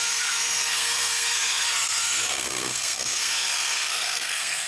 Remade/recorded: remade